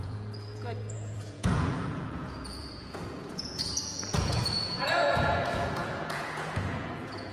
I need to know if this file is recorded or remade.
remade